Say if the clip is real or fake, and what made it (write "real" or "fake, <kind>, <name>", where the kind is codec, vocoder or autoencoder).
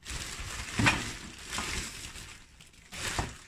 real